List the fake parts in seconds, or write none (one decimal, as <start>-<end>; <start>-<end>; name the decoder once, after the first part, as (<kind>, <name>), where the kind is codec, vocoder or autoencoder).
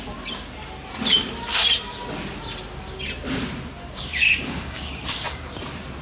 3.8-4.9 (codec, DAC)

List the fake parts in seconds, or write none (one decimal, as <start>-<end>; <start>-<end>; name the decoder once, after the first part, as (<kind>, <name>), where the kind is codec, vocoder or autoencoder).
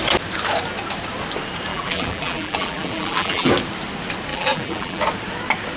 1.7-3.5 (vocoder, BigVGAN v2); 4.3-5.0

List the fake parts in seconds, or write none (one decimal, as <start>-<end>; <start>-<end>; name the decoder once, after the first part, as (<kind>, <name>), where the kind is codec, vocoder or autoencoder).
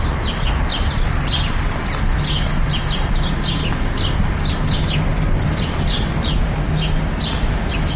none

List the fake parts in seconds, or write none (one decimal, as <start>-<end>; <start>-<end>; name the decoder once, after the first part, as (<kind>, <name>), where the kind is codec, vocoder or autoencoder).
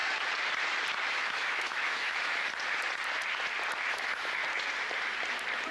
1.1-2.5 (autoencoder, DAC-VAE); 3.9-4.4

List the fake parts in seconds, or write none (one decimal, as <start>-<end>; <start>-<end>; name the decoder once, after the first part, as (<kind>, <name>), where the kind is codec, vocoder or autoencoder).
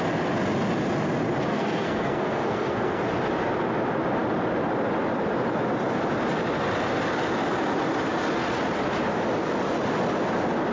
1.5-3.0 (codec, SNAC)